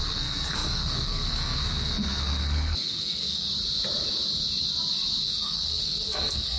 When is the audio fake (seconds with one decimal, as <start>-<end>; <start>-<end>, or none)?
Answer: 0.0-3.5; 5.2-6.6